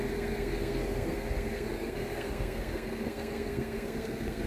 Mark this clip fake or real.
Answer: fake